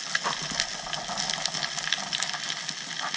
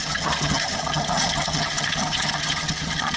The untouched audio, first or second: first